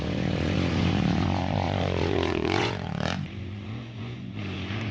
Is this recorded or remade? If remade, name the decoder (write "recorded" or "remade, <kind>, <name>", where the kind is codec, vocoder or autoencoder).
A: remade, vocoder, Vocos